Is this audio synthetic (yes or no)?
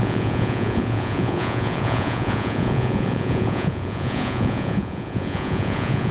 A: yes